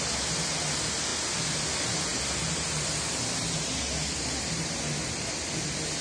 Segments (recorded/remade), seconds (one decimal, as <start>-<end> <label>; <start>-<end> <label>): 0.0-6.0 recorded